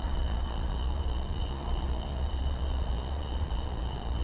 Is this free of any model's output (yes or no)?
no